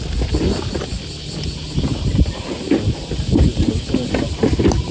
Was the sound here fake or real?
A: real